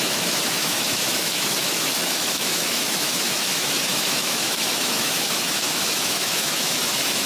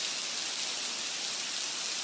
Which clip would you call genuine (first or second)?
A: second